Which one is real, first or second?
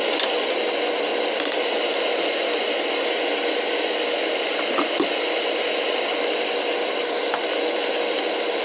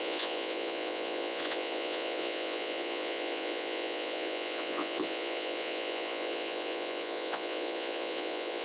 first